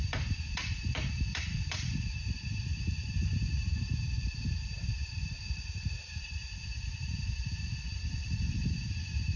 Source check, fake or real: fake